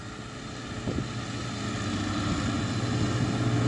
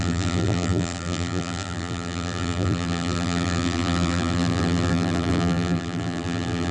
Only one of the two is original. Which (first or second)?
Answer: first